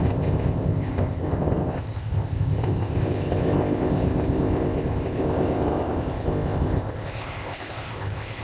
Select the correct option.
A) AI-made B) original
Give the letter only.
A